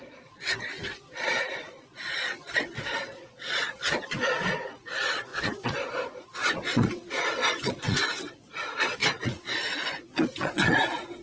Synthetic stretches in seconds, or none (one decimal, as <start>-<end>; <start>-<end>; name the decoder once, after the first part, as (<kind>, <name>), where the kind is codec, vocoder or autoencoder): 0.0-11.2 (vocoder, Vocos)